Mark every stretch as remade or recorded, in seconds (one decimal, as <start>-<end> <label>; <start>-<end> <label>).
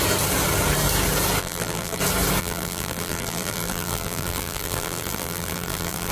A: 0.0-1.4 recorded; 1.4-2.0 remade; 2.0-2.4 recorded; 2.4-6.1 remade